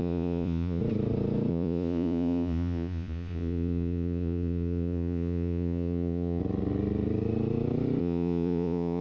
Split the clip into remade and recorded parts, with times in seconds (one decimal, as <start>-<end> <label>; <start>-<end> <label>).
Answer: 0.0-0.8 remade; 0.8-1.5 recorded; 1.5-6.4 remade; 6.4-8.0 recorded; 8.0-9.0 remade